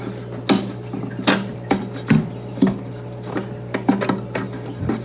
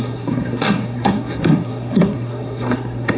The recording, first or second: first